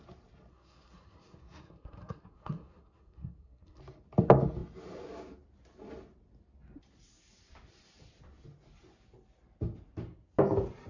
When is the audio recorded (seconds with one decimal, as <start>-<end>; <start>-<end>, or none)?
0.0-0.5; 3.8-10.9